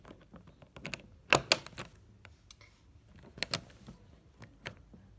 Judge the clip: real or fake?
real